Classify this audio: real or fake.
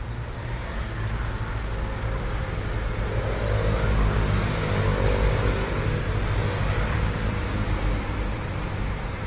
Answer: real